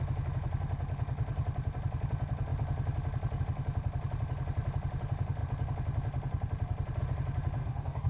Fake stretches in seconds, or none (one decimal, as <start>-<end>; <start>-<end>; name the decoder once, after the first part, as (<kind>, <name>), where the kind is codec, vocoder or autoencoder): 7.6-8.1 (codec, DAC)